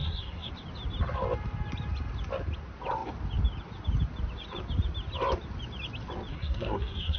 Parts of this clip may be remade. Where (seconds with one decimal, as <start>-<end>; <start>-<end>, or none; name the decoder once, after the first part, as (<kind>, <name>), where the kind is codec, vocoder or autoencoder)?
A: 0.0-0.5 (codec, SNAC); 6.3-7.2